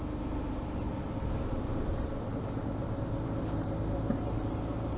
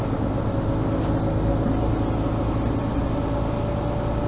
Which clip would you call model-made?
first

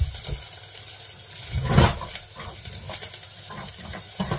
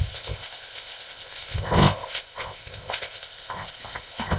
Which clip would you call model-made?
second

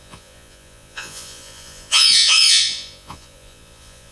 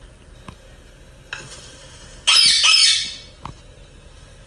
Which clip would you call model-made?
first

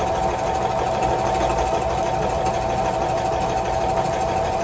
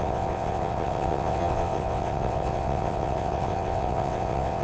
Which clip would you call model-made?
second